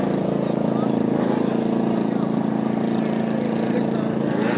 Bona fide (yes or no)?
yes